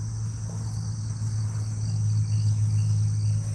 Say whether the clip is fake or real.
real